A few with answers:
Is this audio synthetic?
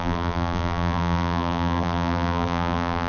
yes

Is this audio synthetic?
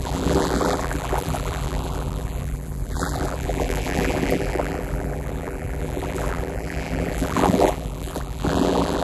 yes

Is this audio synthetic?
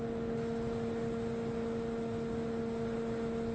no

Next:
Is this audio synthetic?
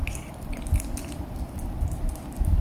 yes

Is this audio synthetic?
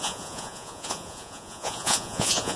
yes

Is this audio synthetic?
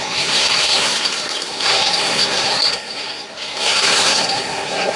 yes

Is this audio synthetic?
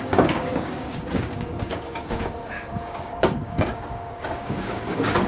yes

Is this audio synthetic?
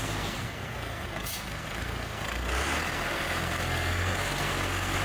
yes